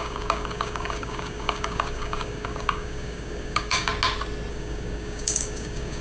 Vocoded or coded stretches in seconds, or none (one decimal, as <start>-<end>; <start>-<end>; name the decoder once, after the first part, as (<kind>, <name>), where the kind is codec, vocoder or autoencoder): 0.0-3.9 (codec, DAC); 4.5-6.0